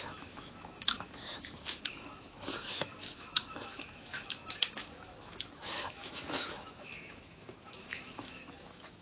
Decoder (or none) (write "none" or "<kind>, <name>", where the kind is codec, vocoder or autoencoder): autoencoder, DAC-VAE